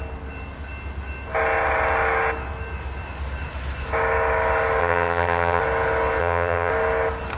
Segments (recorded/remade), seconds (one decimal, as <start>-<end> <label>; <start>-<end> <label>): 0.0-4.8 recorded; 4.8-5.6 remade; 5.6-6.2 recorded; 6.2-6.7 remade; 6.7-7.4 recorded